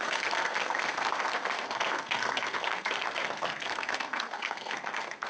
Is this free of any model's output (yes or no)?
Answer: no